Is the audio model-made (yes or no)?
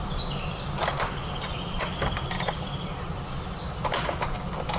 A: no